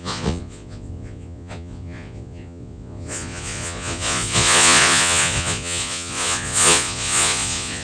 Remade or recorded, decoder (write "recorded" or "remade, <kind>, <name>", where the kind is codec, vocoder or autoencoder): remade, vocoder, Vocos